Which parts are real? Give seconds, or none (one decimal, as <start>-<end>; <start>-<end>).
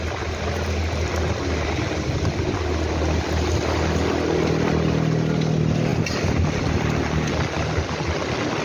0.0-8.6